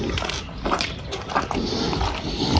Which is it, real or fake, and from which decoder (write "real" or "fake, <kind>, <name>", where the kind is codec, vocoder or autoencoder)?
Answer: fake, vocoder, BigVGAN v2